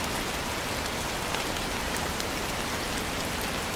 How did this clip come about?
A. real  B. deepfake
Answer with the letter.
A